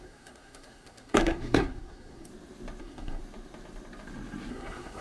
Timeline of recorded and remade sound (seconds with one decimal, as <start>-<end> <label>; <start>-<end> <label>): 0.0-2.3 remade; 2.3-2.8 recorded; 2.8-3.2 remade; 3.2-4.5 recorded; 4.5-5.0 remade